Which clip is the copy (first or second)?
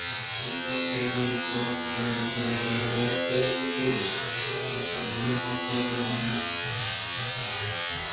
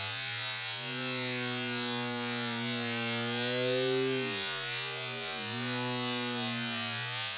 first